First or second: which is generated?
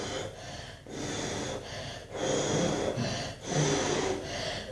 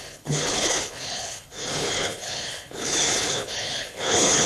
second